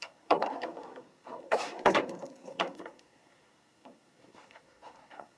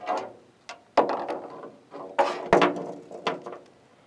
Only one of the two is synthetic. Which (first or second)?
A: first